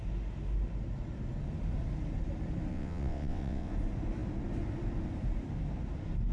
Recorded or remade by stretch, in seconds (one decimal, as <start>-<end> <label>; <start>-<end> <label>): 0.0-2.7 recorded; 2.7-3.7 remade; 3.7-6.3 recorded